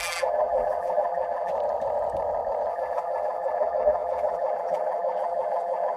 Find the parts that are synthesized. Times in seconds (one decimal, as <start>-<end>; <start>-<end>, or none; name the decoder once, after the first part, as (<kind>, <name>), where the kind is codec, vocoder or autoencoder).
0.0-1.5 (vocoder, BigVGAN v2); 2.7-6.0